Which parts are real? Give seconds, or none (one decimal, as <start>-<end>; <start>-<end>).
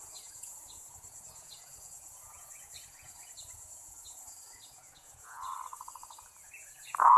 none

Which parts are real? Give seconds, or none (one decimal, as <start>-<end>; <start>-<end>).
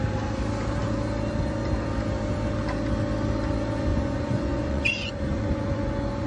0.0-3.9